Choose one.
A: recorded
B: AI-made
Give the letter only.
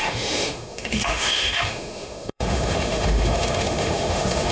B